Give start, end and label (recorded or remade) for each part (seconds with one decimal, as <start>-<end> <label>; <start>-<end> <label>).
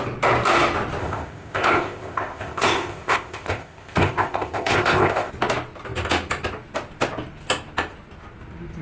0.0-1.0 recorded; 1.0-5.3 remade; 5.3-8.8 recorded